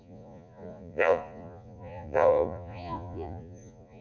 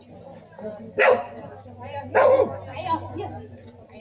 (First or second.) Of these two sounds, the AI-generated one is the first